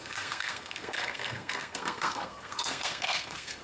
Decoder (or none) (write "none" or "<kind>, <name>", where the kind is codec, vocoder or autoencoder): codec, SNAC